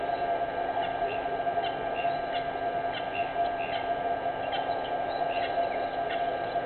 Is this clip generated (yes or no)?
no